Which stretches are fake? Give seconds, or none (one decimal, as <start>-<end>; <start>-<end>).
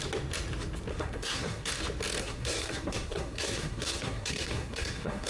0.9-1.7; 2.2-5.3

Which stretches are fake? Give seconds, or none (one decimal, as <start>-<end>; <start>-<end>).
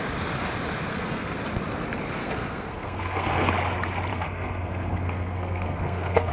0.9-1.4; 2.2-3.5; 4.1-6.3